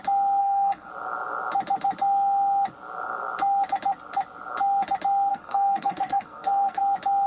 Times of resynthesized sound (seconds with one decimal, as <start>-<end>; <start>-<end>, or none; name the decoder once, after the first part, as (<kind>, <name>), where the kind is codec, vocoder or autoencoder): 0.4-0.9 (codec, SNAC); 5.3-6.8